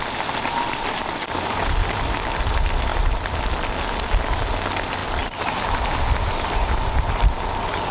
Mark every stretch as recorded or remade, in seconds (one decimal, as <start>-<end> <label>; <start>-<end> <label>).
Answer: 0.0-2.9 remade; 2.9-4.1 recorded; 4.1-5.0 remade; 5.0-5.9 recorded; 5.9-7.9 remade